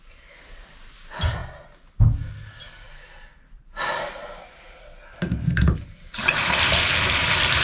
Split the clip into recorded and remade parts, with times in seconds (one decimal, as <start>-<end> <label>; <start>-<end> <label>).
0.0-7.6 recorded